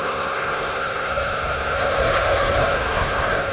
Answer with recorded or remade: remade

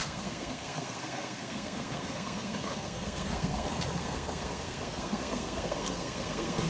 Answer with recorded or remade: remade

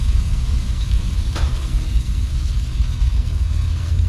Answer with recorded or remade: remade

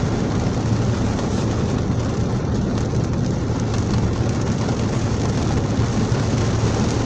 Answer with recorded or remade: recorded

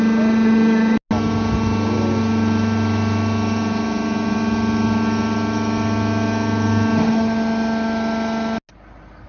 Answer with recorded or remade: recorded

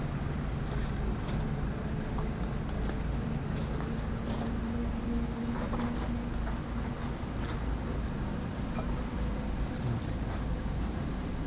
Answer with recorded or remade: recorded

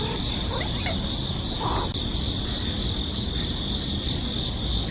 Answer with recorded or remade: recorded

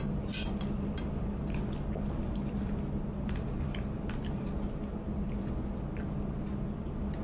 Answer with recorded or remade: recorded